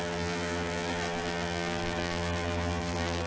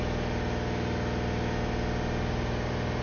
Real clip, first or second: second